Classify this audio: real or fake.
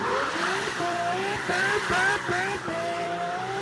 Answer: fake